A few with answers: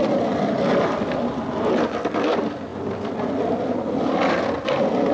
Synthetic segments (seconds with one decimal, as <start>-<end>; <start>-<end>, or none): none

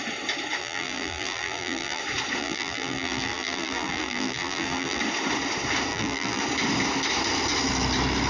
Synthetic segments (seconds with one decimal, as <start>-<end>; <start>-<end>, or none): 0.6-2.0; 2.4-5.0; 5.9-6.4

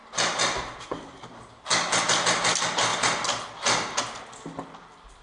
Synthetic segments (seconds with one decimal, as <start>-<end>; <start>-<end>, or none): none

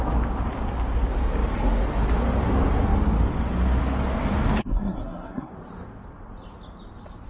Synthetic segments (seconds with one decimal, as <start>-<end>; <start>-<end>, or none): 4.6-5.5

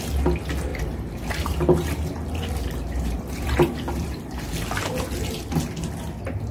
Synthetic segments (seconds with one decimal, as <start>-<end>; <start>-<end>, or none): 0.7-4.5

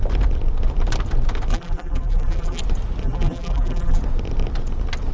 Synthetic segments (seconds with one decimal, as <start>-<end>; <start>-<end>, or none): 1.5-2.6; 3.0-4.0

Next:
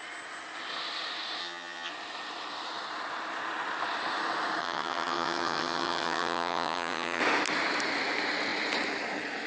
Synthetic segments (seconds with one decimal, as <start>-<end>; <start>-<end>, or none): 1.4-1.9; 4.6-7.2